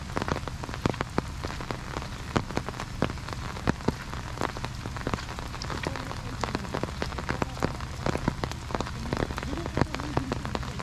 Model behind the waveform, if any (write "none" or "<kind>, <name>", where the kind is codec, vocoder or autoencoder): none